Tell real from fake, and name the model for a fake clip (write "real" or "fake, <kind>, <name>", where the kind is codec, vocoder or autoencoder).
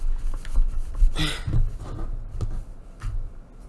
real